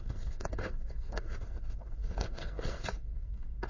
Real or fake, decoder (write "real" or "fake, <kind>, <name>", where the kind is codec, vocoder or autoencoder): fake, codec, SNAC